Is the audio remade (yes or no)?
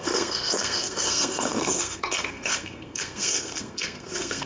yes